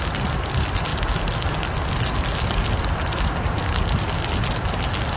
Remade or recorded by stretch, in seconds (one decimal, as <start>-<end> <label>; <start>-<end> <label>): 0.0-5.2 recorded